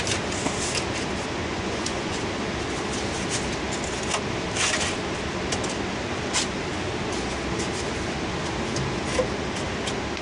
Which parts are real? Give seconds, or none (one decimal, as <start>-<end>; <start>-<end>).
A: 0.0-1.4; 2.2-10.2